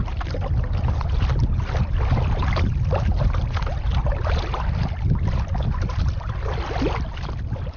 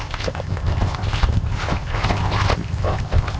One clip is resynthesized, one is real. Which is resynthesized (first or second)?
second